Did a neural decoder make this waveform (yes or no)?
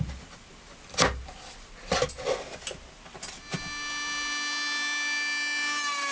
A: no